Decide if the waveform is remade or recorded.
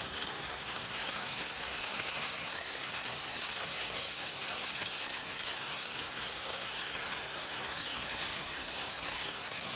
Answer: remade